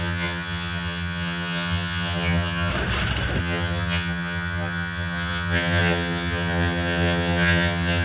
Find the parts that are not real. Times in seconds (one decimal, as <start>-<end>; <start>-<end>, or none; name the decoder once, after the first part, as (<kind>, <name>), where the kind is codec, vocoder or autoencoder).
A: 0.0-2.7 (vocoder, HiFi-GAN); 3.4-8.0